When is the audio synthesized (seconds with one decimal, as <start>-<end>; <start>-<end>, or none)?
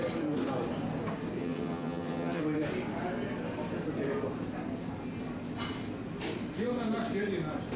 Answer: 1.4-2.4